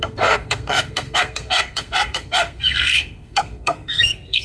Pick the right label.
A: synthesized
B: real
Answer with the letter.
A